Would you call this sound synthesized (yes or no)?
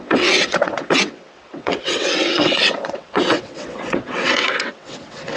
yes